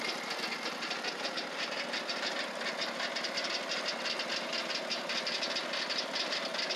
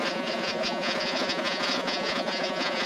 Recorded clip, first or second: first